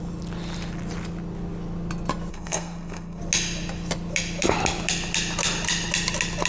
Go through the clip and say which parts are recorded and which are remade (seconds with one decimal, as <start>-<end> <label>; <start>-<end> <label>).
0.0-2.3 recorded; 2.3-3.2 remade; 3.2-6.5 recorded